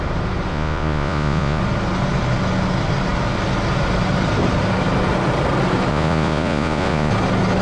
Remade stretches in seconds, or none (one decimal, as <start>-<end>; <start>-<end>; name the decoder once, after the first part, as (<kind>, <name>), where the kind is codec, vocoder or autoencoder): 0.5-1.6 (vocoder, Vocos); 5.9-7.1